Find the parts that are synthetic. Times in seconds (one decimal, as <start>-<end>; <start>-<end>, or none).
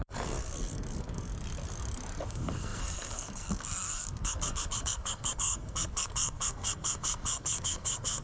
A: 0.0-1.3; 2.2-8.2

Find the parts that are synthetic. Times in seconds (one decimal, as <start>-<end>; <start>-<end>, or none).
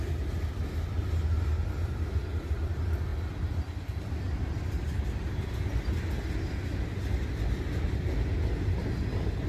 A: none